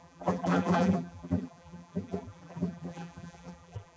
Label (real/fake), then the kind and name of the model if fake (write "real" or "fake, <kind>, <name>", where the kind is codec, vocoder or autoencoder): fake, vocoder, BigVGAN v2